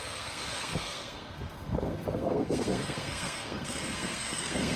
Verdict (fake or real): fake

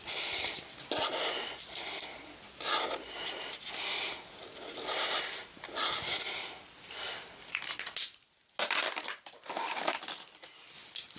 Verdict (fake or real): real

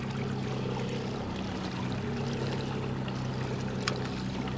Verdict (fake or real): real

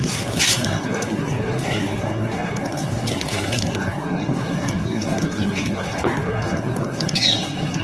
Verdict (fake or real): fake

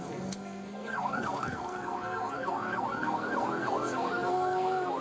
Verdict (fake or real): fake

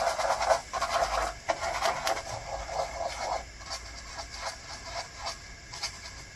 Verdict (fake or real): real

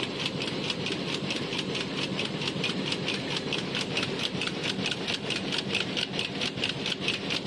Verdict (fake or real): real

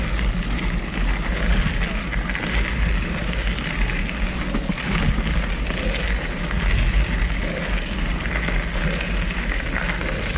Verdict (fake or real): real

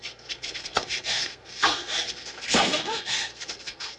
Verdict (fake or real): fake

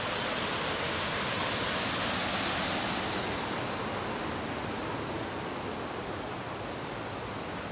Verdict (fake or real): real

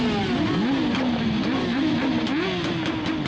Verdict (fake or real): real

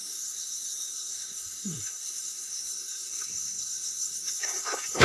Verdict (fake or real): fake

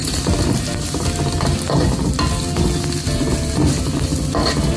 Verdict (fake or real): real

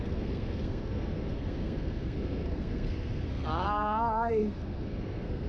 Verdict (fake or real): fake